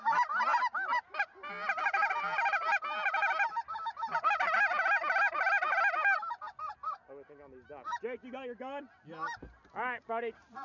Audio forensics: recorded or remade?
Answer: recorded